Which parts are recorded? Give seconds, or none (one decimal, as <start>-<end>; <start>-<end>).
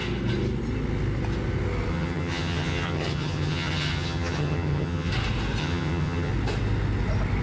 0.0-1.9; 5.1-5.6; 6.3-7.4